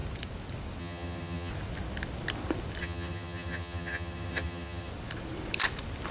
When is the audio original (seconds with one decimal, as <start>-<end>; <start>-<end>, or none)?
0.0-0.8; 1.5-2.8; 4.9-6.1